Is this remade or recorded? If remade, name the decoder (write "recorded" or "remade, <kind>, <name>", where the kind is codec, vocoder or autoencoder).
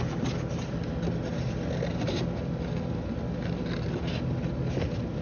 recorded